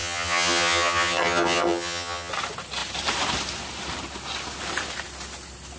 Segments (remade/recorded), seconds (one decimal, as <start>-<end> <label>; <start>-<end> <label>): 0.0-2.3 remade; 2.3-5.8 recorded